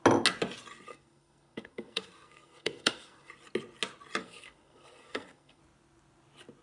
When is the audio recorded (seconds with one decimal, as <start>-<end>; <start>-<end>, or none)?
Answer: 0.0-0.9; 3.3-4.2; 5.6-6.6